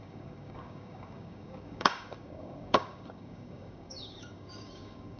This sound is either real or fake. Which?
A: fake